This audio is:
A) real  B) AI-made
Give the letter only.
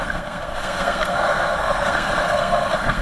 B